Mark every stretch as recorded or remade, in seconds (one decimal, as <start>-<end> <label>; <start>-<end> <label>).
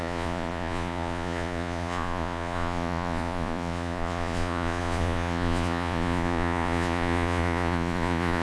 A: 0.0-8.4 remade